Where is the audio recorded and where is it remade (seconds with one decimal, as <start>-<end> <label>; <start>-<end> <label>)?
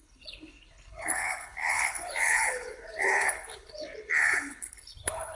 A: 0.0-5.3 remade